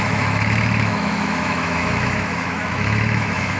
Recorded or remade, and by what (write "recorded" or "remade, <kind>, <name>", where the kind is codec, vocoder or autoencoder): remade, autoencoder, DAC-VAE